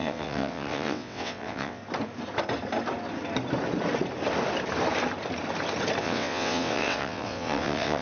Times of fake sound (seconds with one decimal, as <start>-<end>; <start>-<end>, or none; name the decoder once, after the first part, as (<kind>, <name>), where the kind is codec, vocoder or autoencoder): 0.0-1.8 (vocoder, WaveNeXt); 6.0-8.0